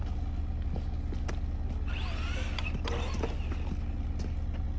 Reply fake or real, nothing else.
real